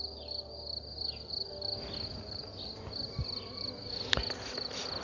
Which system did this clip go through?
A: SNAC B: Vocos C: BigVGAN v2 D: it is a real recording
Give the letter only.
D